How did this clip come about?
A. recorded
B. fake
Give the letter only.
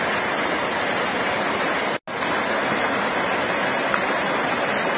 A